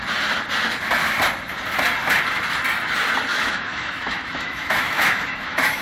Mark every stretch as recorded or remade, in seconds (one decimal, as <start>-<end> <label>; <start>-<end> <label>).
0.0-3.3 recorded; 3.3-5.8 remade